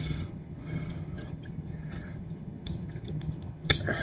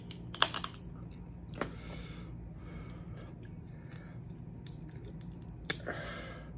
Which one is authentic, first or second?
second